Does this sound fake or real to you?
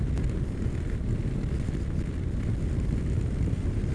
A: real